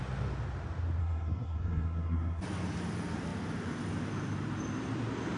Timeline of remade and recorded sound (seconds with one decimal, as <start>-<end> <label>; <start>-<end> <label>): 0.0-1.0 recorded; 1.0-2.4 remade; 2.4-5.4 recorded